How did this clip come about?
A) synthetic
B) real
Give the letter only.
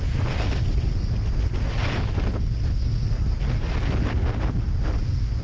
B